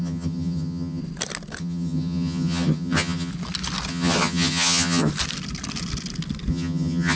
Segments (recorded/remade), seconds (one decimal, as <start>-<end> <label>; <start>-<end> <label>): 0.0-1.0 remade; 1.0-1.6 recorded; 1.6-3.3 remade; 3.3-3.9 recorded; 3.9-5.1 remade; 5.1-6.5 recorded; 6.5-7.2 remade

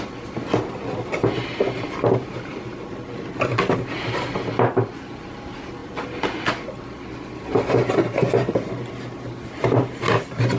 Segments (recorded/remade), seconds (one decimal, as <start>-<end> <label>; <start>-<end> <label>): 0.0-10.6 recorded

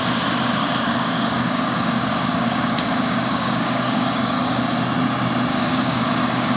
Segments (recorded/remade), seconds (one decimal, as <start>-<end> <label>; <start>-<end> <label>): 0.0-0.6 recorded; 0.6-4.6 remade; 4.6-5.5 recorded; 5.5-6.6 remade

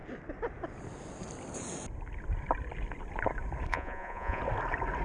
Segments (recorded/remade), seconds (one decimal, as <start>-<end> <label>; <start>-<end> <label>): 0.0-3.7 recorded; 3.7-4.4 remade; 4.4-5.0 recorded